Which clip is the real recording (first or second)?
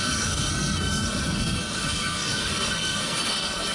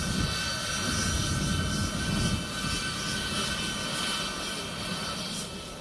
second